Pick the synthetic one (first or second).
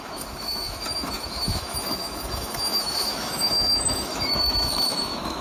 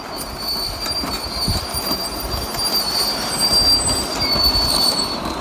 first